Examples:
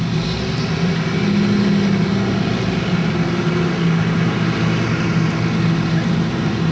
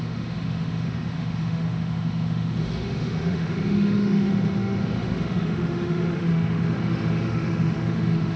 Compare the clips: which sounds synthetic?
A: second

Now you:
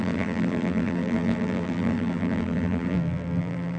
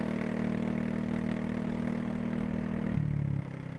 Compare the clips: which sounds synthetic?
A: first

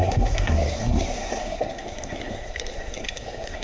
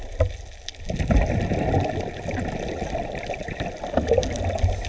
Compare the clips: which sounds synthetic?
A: first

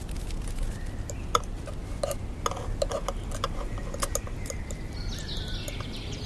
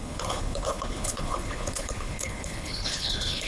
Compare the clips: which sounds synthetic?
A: second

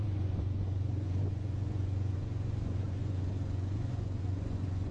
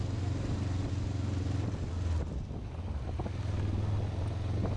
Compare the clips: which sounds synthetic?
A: first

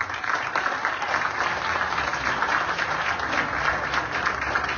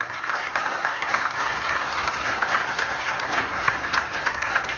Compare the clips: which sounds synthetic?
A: second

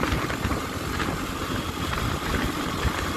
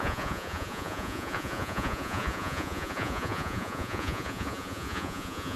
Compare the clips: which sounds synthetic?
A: second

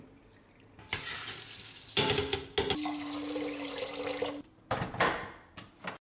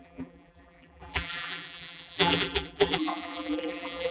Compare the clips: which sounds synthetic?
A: second